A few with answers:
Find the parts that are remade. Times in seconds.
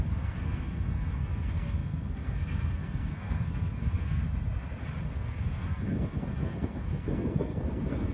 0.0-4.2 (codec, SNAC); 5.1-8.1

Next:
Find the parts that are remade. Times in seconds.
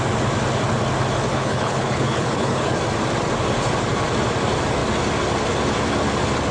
1.3-2.8 (codec, HILCodec)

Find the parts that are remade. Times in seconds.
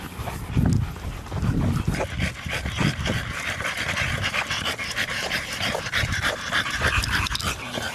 4.8-7.3 (vocoder, BigVGAN v2)